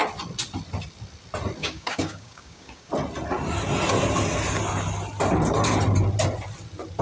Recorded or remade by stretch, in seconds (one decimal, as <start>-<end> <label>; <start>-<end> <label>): 0.0-1.6 recorded; 1.6-2.9 remade; 2.9-7.0 recorded